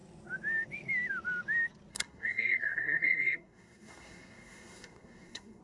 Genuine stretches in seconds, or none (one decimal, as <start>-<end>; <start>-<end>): 0.0-1.9